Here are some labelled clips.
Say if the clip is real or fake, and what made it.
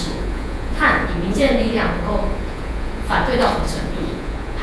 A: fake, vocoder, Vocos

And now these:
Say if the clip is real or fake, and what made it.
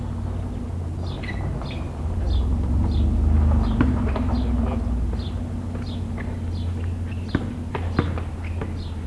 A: real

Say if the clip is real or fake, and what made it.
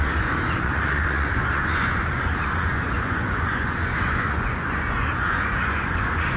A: fake, vocoder, Vocos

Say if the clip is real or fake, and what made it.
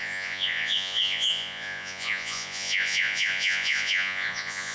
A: fake, vocoder, Vocos